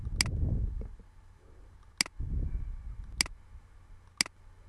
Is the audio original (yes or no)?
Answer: yes